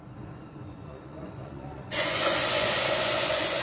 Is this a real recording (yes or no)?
no